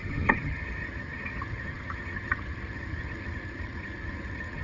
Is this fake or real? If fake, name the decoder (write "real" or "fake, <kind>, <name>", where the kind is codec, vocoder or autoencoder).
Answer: fake, vocoder, HiFi-GAN